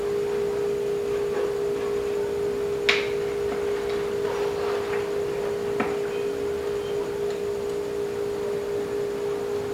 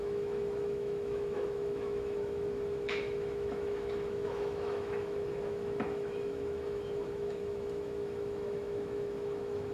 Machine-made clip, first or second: second